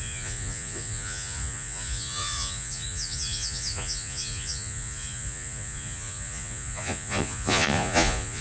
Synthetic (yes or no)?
yes